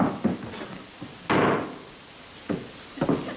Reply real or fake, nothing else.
real